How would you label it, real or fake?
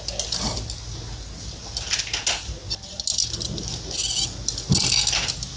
real